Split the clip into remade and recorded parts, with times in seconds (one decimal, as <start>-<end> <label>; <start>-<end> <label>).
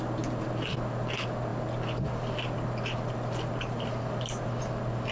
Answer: 0.0-5.1 recorded